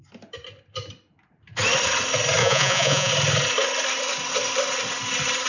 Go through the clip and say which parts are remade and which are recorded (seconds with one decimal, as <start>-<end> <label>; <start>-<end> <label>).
0.0-2.4 recorded; 2.4-3.1 remade; 3.1-5.5 recorded

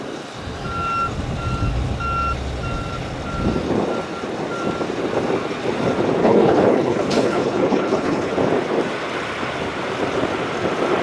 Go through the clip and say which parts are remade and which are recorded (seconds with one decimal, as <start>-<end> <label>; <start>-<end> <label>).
0.0-6.2 recorded; 6.2-8.3 remade; 8.3-11.0 recorded